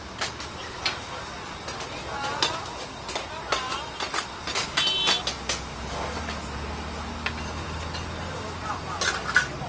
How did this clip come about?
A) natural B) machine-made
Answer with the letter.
A